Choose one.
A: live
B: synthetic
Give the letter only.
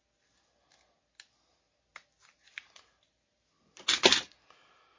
A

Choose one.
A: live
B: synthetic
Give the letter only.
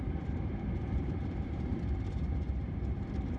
B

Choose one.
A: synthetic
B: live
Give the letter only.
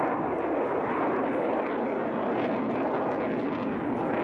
B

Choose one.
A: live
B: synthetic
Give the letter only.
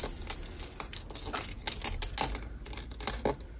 A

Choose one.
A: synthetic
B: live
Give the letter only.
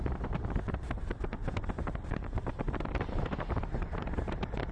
A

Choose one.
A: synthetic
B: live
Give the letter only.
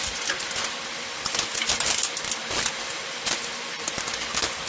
A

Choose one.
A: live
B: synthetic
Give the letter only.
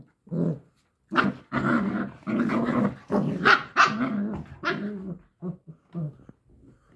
A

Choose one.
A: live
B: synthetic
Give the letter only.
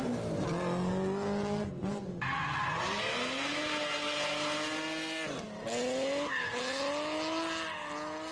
A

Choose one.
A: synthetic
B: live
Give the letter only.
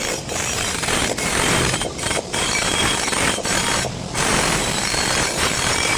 A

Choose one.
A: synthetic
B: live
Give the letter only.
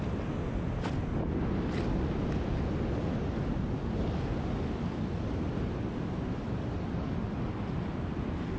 B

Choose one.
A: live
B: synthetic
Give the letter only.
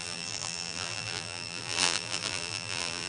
B